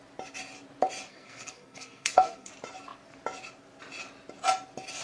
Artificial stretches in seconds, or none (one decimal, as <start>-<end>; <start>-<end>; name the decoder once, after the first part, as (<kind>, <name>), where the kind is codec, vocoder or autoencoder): 1.1-2.5 (codec, SNAC)